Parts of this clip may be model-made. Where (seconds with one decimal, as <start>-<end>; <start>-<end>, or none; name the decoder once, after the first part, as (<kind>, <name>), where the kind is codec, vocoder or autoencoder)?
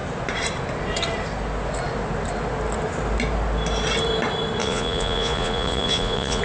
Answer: 4.6-6.4 (vocoder, Vocos)